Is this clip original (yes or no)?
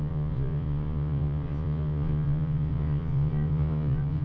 no